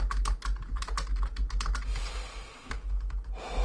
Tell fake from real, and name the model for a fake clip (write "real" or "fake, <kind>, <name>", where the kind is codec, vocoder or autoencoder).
real